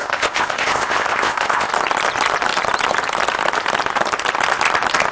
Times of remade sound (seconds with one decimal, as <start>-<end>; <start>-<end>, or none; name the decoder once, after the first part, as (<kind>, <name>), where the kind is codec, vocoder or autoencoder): 0.0-1.7 (codec, ZipCodec)